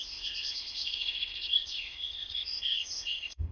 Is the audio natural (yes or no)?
no